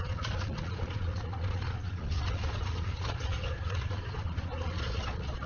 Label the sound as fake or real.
fake